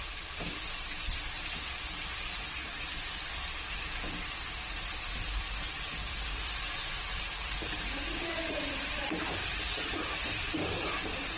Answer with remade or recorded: remade